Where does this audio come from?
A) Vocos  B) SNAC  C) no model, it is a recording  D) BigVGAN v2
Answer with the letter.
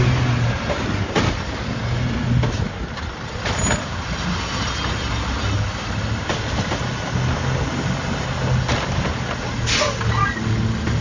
C